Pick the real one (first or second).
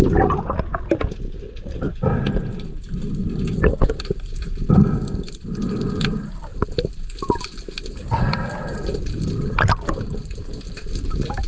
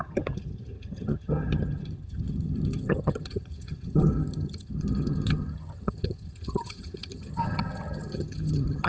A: first